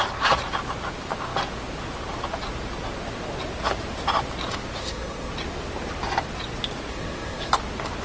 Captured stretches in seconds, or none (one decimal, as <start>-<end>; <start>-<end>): 0.0-4.8; 5.3-6.9; 7.5-8.0